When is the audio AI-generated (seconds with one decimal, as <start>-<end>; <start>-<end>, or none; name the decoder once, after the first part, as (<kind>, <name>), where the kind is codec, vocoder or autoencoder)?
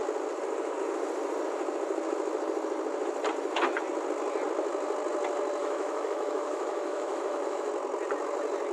5.6-7.7 (autoencoder, DAC-VAE)